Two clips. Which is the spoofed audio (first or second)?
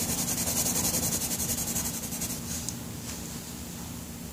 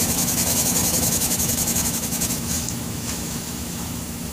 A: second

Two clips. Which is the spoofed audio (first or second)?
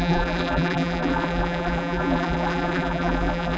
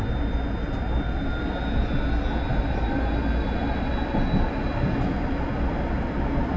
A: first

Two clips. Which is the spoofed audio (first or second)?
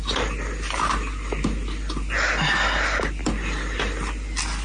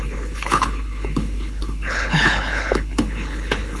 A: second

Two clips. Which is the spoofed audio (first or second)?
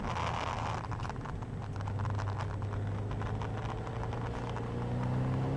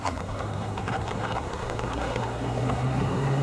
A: second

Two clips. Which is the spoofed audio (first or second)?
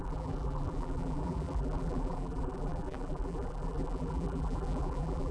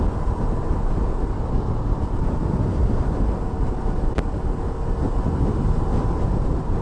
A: first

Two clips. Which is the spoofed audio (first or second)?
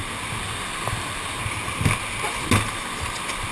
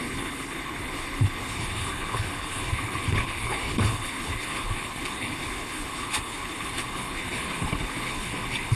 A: second